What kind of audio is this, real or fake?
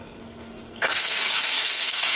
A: fake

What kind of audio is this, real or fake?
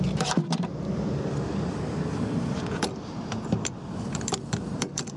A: fake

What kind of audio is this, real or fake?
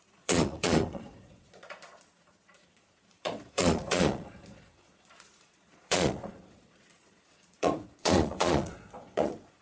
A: fake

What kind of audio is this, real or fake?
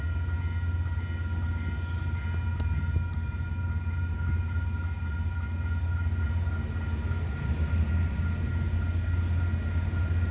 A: real